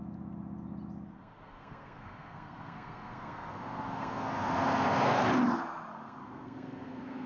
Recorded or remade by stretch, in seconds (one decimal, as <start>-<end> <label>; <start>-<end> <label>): 0.0-1.2 recorded; 1.2-5.2 remade; 5.2-5.9 recorded; 5.9-7.3 remade